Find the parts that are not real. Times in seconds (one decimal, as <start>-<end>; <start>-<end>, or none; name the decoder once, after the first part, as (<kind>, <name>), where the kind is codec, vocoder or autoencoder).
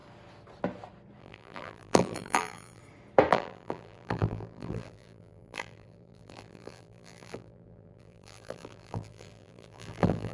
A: 1.2-2.8 (vocoder, BigVGAN v2); 3.3-10.3